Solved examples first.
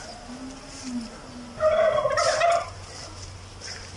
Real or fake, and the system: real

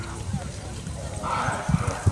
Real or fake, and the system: real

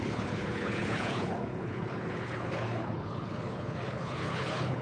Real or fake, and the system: fake, codec, HILCodec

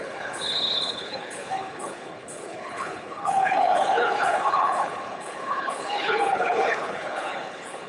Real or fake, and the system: fake, codec, HILCodec